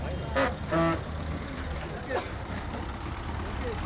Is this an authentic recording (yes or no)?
yes